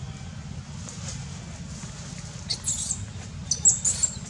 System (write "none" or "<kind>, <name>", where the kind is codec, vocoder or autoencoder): none